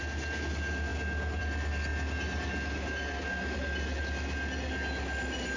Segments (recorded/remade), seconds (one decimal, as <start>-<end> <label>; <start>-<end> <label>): 0.0-5.6 recorded